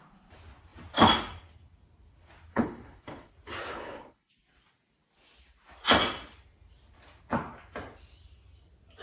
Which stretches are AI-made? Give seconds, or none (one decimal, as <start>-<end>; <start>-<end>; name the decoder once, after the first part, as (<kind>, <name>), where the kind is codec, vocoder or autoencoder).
2.5-3.3 (codec, HILCodec); 3.7-4.3